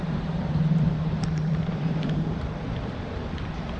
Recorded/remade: remade